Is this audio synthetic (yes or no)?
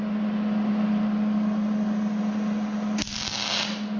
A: no